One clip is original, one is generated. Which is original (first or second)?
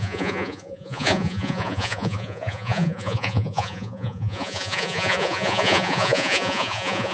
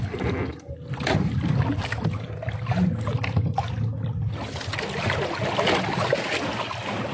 second